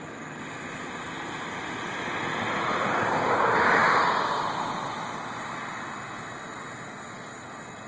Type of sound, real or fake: real